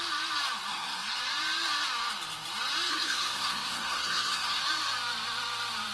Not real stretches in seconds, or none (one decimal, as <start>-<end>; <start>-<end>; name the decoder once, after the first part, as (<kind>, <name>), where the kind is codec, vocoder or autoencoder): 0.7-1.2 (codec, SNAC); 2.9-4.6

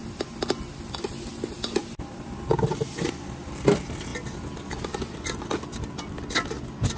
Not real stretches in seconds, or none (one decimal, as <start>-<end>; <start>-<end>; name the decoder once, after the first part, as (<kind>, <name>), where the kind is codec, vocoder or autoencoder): none

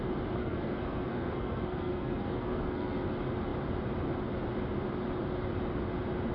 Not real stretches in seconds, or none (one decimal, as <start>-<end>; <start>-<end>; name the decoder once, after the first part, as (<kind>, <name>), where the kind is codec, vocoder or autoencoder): 0.4-3.1 (codec, SNAC)